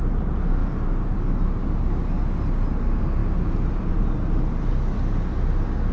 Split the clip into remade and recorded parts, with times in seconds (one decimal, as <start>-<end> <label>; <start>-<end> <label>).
0.0-5.9 recorded